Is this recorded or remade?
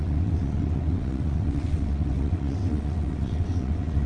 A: remade